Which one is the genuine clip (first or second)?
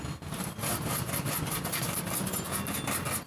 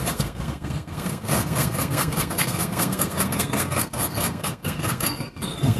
first